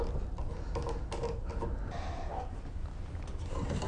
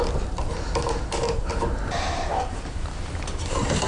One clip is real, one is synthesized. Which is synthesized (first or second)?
second